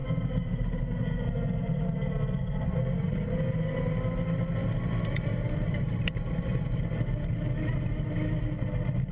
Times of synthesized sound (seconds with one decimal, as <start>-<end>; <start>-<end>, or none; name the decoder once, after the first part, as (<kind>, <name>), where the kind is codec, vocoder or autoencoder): 0.0-0.8 (vocoder, BigVGAN v2); 4.6-6.8